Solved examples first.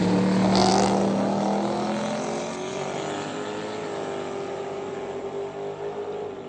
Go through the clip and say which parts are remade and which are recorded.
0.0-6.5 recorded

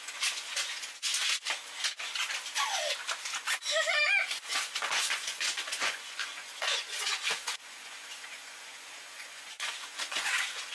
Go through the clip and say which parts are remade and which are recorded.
0.0-1.1 remade; 1.1-4.3 recorded; 4.3-10.7 remade

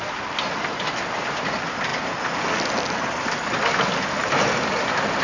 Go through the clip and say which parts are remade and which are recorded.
0.0-5.2 recorded